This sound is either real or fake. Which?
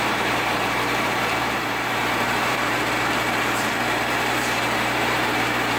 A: fake